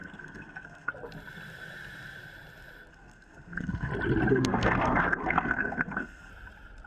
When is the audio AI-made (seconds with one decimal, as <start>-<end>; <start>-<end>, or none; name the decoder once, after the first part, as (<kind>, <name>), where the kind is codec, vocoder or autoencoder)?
0.0-0.9 (codec, SNAC); 2.9-3.9; 4.3-6.3